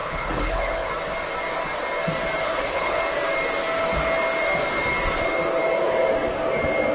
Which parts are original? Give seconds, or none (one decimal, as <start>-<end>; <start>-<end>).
0.9-2.4; 3.0-6.9